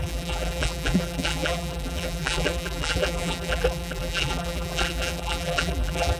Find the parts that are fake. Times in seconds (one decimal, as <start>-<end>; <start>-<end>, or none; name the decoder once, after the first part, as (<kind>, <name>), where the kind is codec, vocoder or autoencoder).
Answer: 0.0-6.2 (vocoder, BigVGAN v2)